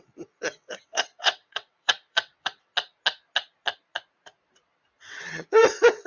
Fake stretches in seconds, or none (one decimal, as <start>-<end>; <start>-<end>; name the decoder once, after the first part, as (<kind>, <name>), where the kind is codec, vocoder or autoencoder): 0.0-2.7 (vocoder, WaveNeXt); 5.0-6.1